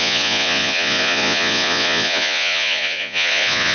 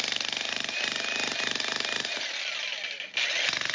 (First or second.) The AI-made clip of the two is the first